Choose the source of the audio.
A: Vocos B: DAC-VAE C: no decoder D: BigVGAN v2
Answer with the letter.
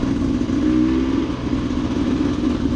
C